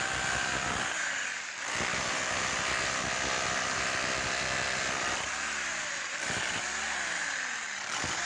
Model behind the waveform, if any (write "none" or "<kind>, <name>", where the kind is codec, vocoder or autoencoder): vocoder, BigVGAN v2